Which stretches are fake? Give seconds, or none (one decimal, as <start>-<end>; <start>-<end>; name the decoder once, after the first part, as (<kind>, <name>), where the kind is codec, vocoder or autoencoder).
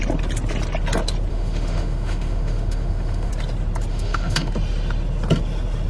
1.3-3.3 (autoencoder, DAC-VAE); 3.9-4.5